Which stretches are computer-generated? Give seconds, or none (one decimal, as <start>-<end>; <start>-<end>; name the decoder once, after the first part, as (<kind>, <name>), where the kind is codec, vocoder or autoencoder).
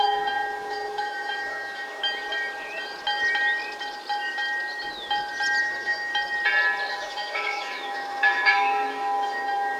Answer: 0.0-2.0 (autoencoder, DAC-VAE); 5.6-6.1; 6.9-9.8